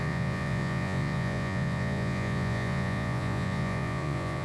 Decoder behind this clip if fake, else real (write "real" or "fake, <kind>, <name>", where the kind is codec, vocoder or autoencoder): fake, vocoder, Vocos